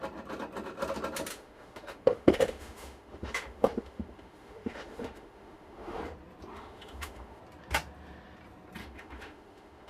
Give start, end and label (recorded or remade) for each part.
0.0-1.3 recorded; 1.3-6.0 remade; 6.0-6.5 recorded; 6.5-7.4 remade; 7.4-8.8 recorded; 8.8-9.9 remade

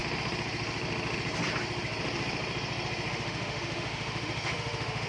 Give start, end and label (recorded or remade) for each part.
0.0-3.1 recorded; 3.1-5.1 remade

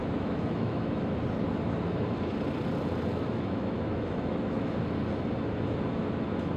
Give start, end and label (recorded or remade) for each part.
0.0-1.2 remade; 1.2-3.1 recorded; 3.1-4.7 remade; 4.7-6.6 recorded

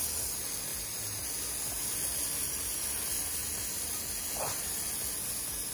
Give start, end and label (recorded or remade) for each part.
0.0-5.7 recorded

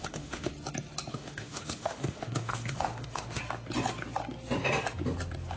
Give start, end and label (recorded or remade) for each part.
0.0-0.5 remade; 0.5-1.1 recorded; 1.1-3.4 remade; 3.4-5.6 recorded

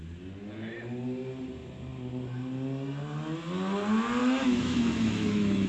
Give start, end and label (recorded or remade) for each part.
0.0-4.2 recorded; 4.2-5.7 remade

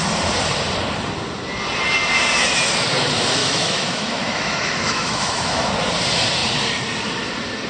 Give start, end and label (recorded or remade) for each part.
0.0-3.4 recorded; 3.4-5.7 remade; 5.7-7.7 recorded

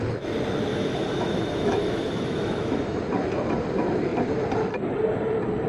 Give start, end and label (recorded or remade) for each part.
0.0-0.7 recorded; 0.7-3.0 remade; 3.0-5.7 recorded